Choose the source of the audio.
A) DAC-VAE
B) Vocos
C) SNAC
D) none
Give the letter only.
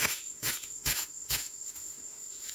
A